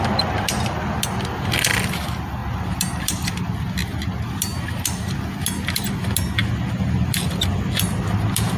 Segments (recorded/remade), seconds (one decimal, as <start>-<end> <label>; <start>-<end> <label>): 0.0-8.6 recorded